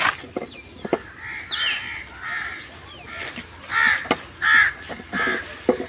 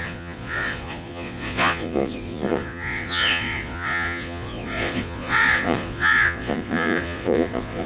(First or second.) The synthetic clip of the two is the second